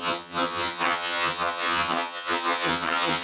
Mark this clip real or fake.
fake